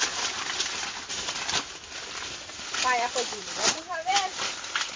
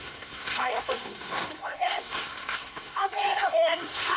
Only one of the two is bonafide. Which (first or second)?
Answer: first